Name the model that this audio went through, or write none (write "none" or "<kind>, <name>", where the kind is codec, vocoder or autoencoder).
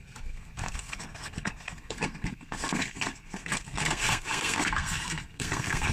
codec, SNAC